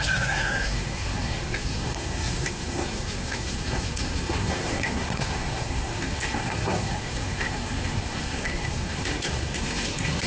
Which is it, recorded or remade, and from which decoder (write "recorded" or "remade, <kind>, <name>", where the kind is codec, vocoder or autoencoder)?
remade, codec, SNAC